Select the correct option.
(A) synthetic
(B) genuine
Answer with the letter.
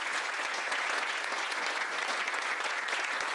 A